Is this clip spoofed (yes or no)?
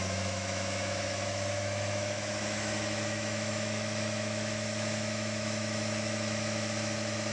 yes